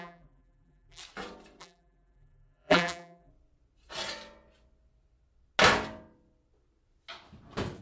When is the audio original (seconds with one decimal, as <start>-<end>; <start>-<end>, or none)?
1.0-1.6; 3.3-7.8